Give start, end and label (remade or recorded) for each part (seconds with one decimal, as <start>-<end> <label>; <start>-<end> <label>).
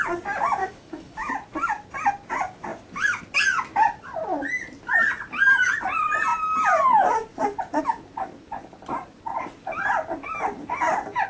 0.0-0.6 recorded; 0.6-1.3 remade; 1.3-11.3 recorded